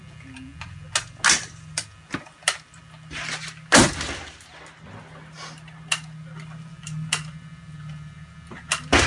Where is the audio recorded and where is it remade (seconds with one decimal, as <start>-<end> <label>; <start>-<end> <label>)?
0.0-9.1 recorded